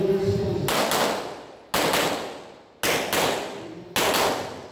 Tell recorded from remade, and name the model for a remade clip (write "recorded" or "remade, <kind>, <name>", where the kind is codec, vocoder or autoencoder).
recorded